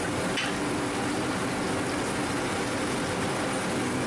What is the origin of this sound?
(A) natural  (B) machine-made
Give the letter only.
A